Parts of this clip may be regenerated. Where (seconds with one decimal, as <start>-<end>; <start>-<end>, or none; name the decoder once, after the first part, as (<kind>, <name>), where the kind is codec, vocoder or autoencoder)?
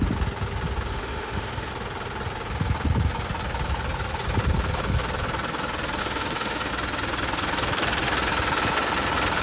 0.9-1.7 (autoencoder, DAC-VAE); 6.0-6.7